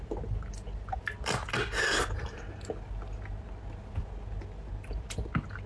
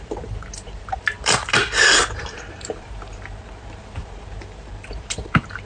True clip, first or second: first